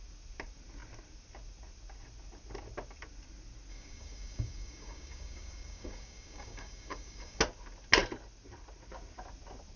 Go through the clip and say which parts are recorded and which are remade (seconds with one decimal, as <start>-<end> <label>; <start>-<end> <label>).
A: 0.0-3.7 recorded; 3.7-7.4 remade; 7.4-9.8 recorded